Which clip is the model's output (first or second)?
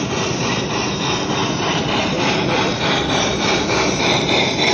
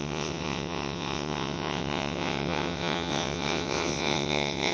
second